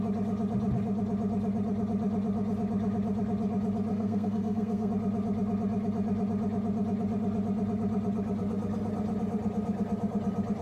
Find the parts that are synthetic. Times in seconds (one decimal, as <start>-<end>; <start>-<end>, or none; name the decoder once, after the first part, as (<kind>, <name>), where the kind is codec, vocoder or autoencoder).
3.9-4.9 (codec, SNAC)